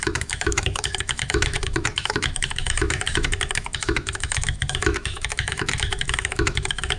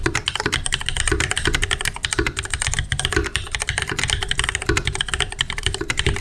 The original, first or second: second